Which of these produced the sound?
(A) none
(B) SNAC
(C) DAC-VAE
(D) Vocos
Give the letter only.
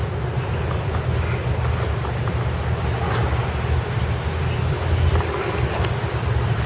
A